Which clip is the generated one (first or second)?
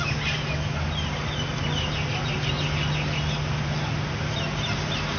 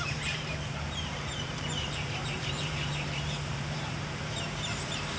second